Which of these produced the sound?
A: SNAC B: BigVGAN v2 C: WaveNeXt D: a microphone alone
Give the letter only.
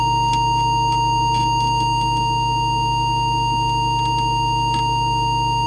D